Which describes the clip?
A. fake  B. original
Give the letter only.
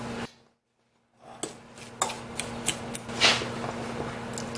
B